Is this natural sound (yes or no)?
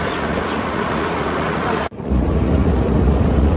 no